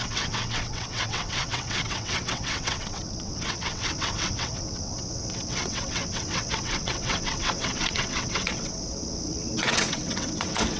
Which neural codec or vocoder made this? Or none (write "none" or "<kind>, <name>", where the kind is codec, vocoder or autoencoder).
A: vocoder, WaveNeXt